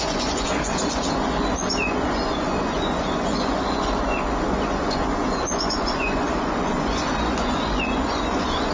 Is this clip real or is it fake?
fake